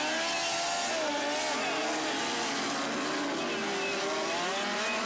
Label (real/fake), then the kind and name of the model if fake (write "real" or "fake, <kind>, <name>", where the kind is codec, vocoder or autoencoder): real